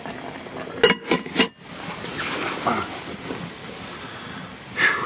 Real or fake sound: real